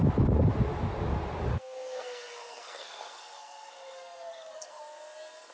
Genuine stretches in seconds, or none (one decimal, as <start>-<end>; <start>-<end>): 0.0-1.5; 4.8-5.5